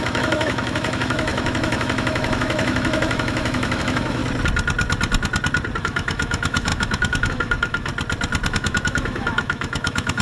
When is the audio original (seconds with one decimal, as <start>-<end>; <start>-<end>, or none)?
4.2-5.8; 7.9-8.5